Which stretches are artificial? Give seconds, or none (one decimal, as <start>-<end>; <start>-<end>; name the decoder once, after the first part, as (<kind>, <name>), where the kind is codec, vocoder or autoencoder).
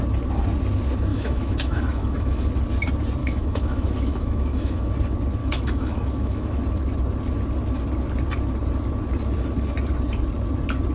1.1-2.5 (autoencoder, DAC-VAE); 3.2-4.9; 5.4-6.6